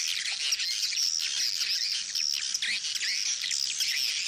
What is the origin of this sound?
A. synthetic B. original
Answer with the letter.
B